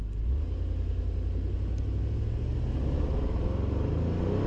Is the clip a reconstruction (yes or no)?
no